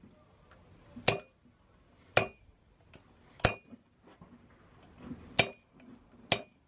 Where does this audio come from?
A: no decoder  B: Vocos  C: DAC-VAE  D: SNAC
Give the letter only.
A